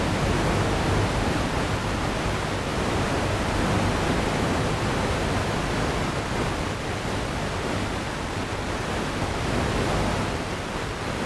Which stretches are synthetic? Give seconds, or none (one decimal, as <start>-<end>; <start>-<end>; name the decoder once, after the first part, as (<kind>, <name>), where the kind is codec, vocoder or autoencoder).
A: none